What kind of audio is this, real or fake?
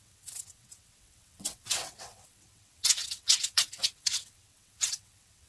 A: fake